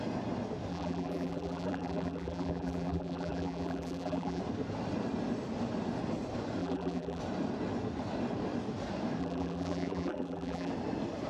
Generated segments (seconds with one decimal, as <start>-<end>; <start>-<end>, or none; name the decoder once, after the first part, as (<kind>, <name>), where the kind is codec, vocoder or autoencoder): 0.7-4.4 (vocoder, BigVGAN v2); 6.6-7.2; 9.2-10.7